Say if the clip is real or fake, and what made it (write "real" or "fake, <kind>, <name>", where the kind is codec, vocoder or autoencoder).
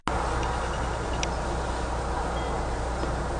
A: real